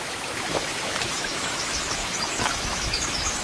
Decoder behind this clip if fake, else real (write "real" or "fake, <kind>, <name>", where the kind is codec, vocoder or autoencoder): fake, autoencoder, DAC-VAE